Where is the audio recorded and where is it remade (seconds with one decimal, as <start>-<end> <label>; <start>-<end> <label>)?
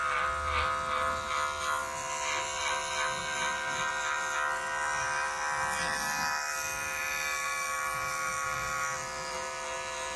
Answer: 0.0-10.2 recorded